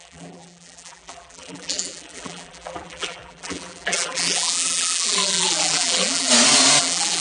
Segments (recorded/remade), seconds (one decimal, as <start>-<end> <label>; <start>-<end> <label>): 0.0-6.3 remade; 6.3-6.8 recorded; 6.8-7.2 remade